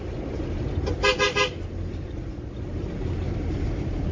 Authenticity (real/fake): real